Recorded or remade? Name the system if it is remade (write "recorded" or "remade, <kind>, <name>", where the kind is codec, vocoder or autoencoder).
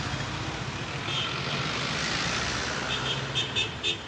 remade, vocoder, BigVGAN v2